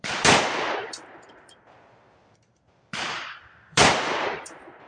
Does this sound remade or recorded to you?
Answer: remade